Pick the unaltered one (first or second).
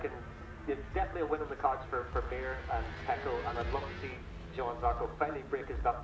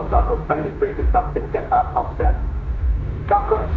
first